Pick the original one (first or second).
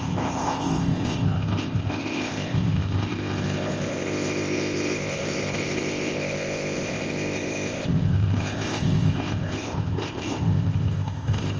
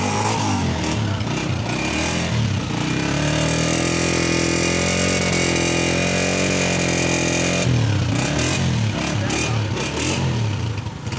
second